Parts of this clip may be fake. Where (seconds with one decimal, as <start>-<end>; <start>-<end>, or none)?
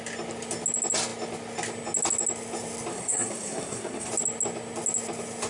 2.9-4.1